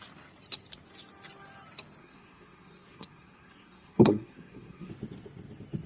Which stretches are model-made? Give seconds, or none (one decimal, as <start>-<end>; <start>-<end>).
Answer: 2.0-4.9